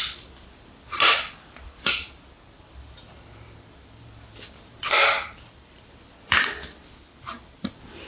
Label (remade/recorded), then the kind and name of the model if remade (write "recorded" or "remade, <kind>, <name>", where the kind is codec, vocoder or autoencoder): remade, vocoder, BigVGAN v2